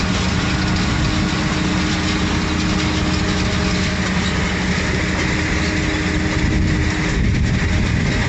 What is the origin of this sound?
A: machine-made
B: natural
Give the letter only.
B